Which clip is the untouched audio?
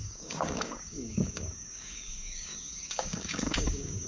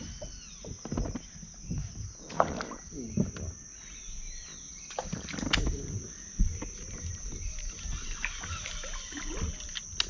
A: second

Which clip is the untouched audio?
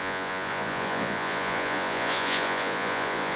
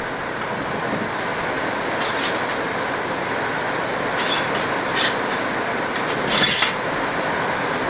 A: second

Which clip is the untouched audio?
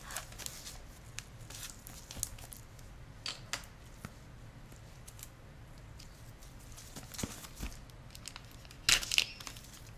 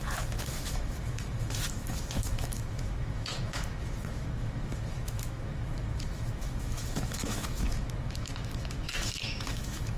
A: first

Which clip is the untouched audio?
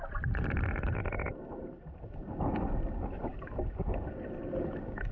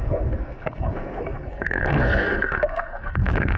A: first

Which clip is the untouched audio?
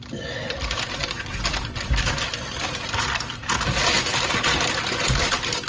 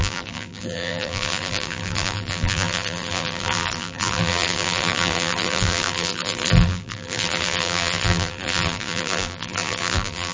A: first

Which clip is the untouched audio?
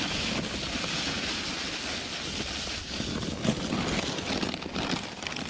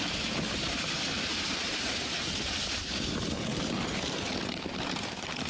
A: first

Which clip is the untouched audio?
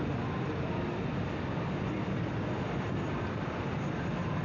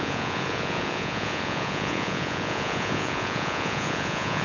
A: first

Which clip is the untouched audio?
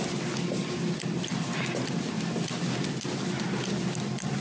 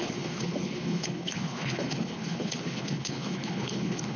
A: first